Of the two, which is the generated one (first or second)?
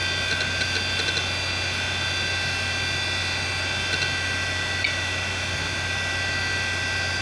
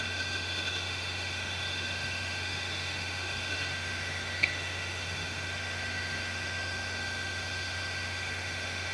second